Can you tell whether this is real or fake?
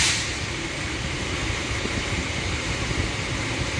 fake